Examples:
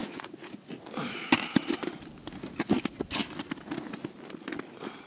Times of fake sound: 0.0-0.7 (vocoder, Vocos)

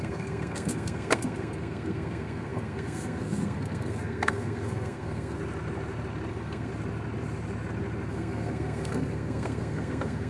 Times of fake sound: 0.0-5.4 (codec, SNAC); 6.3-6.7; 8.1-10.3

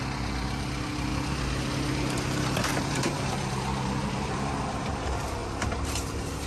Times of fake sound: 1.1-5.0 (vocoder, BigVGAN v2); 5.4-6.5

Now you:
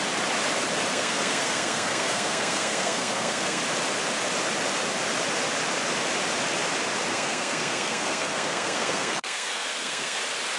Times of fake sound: 0.9-3.6 (codec, SNAC); 7.1-10.2

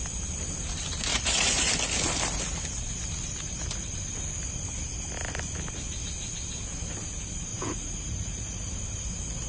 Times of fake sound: 1.1-1.7 (vocoder, Vocos); 7.5-8.7

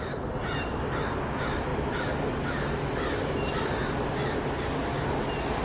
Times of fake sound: none

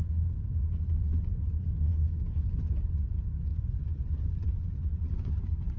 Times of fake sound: 0.7-2.0 (vocoder, Vocos); 2.9-5.8

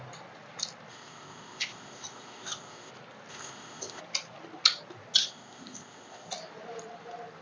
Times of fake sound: 0.9-2.9 (codec, ZipCodec); 3.3-4.0; 5.2-6.3